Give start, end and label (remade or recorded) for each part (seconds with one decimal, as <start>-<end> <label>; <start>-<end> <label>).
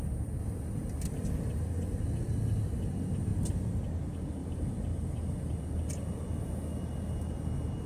0.0-4.4 recorded; 4.4-5.6 remade; 5.6-7.9 recorded